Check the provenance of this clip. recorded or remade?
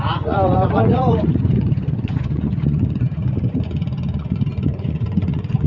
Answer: remade